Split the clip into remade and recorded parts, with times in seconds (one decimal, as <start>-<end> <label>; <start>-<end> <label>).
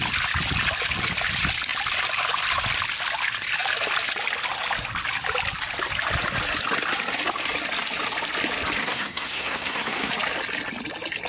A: 0.0-8.8 recorded; 8.8-10.1 remade; 10.1-11.3 recorded